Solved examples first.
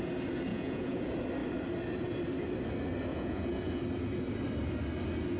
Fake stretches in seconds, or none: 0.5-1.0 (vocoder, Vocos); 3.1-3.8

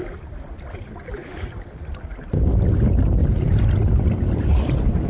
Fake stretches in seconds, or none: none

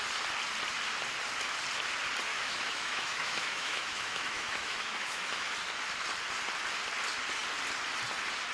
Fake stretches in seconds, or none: 2.3-5.5 (autoencoder, DAC-VAE)

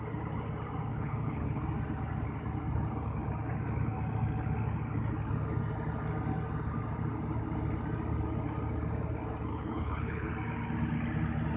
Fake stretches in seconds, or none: 0.9-1.6 (codec, HILCodec); 9.5-10.3